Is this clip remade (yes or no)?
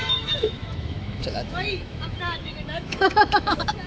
yes